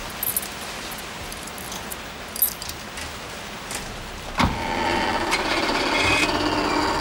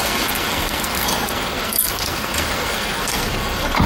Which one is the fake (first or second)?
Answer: second